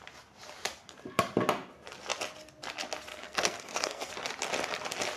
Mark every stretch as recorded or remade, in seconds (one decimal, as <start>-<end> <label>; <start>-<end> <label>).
0.0-3.1 recorded; 3.1-4.1 remade; 4.1-5.2 recorded